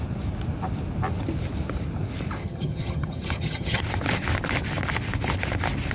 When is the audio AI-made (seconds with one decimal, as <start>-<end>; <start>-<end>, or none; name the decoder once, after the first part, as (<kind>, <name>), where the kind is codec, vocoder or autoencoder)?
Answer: 2.4-3.8 (vocoder, HiFi-GAN)